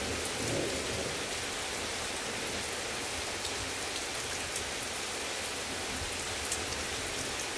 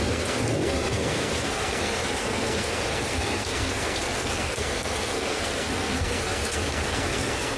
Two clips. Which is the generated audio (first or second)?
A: second